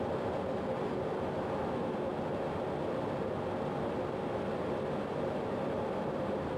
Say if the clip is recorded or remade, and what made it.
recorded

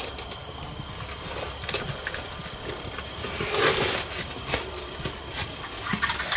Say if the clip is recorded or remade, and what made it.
recorded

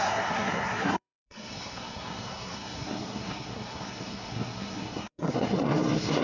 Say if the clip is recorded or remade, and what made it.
remade, codec, SNAC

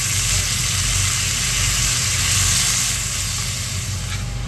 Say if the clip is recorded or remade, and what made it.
recorded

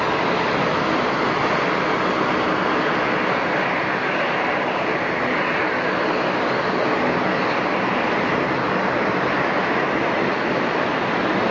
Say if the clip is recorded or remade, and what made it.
recorded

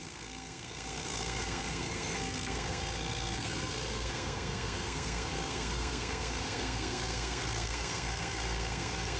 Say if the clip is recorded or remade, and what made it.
remade, codec, SNAC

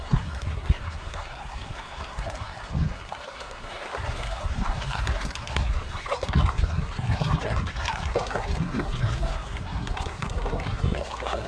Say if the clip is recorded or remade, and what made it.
remade, codec, SNAC